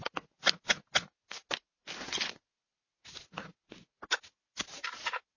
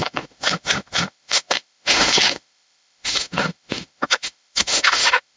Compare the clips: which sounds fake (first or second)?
second